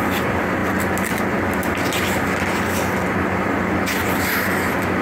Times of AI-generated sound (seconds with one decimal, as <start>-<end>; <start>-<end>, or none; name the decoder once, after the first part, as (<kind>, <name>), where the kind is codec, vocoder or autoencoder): none